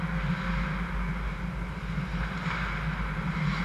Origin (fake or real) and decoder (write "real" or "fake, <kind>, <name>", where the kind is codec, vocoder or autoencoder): real